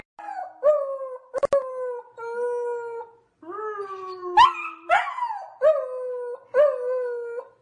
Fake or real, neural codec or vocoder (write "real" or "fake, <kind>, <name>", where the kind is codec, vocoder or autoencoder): real